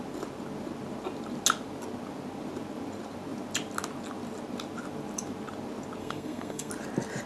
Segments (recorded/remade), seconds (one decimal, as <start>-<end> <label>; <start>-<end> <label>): 0.0-6.0 recorded; 6.0-6.7 remade; 6.7-7.3 recorded